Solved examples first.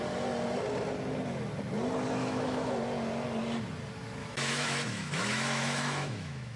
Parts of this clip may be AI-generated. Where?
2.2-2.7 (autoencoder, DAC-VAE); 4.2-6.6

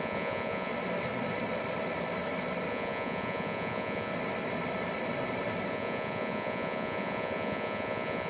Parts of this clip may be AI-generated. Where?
0.0-0.7 (vocoder, Vocos); 2.7-4.1; 5.7-8.3

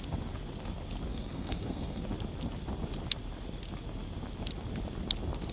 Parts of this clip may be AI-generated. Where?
1.1-2.0 (codec, SNAC)